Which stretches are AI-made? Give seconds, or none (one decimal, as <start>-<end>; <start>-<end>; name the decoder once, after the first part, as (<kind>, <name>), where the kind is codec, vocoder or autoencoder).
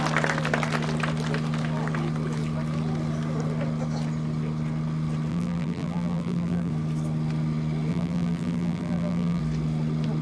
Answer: 5.3-6.7 (vocoder, BigVGAN v2); 7.9-9.4